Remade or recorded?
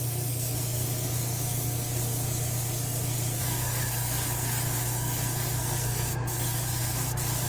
remade